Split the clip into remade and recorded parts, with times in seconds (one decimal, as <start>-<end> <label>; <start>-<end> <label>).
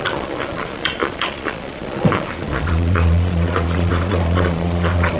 0.0-5.2 remade